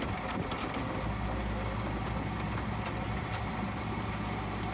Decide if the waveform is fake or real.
real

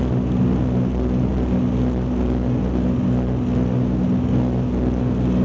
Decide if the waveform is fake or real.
real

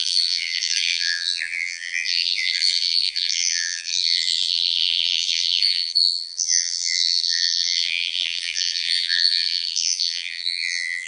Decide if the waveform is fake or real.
fake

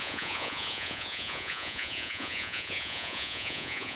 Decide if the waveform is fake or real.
fake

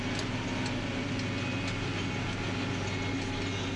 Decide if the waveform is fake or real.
real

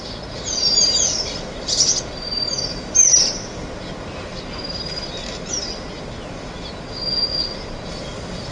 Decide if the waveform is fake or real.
real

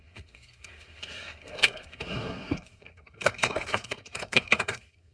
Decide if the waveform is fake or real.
fake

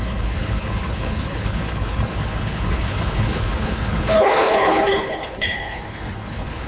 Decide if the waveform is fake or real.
fake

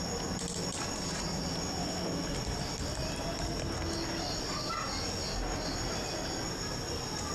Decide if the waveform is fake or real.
real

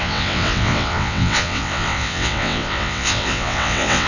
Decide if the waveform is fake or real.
fake